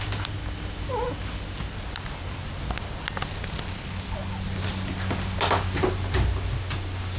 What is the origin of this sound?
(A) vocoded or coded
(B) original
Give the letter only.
B